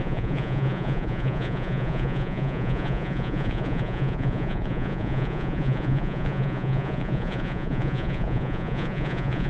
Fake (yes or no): yes